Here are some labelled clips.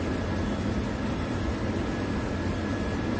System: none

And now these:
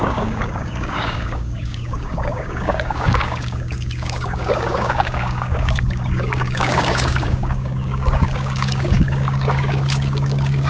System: codec, DAC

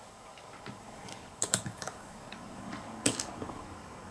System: codec, DAC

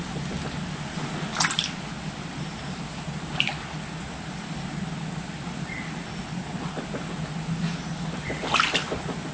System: none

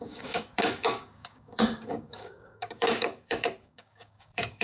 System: codec, DAC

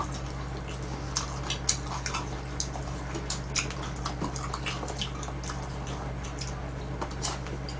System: none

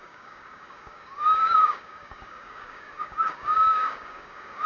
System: codec, DAC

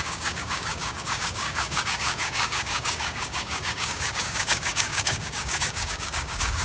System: codec, DAC